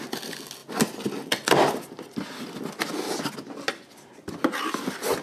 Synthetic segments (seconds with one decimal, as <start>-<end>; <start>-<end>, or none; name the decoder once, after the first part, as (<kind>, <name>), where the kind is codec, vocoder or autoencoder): none